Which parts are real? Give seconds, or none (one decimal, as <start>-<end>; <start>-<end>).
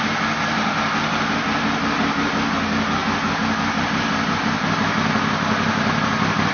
0.0-6.5